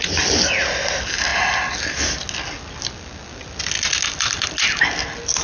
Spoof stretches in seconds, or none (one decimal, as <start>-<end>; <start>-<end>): none